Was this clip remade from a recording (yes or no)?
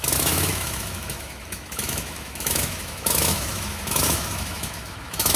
yes